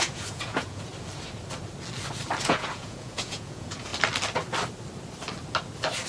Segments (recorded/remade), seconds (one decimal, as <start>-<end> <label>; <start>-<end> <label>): 0.0-0.9 remade; 0.9-2.4 recorded; 2.4-3.9 remade; 3.9-6.1 recorded